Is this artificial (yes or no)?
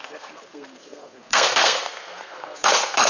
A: yes